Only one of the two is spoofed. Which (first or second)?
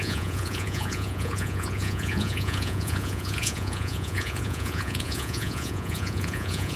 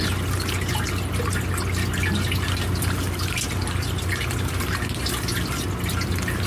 first